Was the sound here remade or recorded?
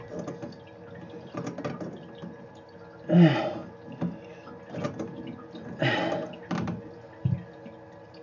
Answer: recorded